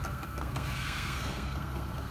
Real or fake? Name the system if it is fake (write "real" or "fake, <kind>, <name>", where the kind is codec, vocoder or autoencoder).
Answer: fake, codec, SNAC